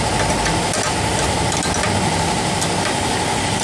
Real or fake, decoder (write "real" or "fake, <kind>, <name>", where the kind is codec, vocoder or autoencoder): real